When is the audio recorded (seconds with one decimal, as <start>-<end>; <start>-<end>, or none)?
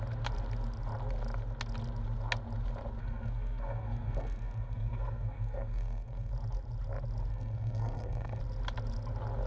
0.0-3.0; 6.3-7.3; 8.4-9.5